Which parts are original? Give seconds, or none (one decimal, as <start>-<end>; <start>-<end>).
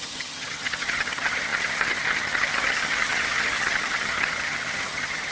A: none